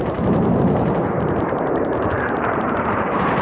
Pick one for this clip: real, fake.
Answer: fake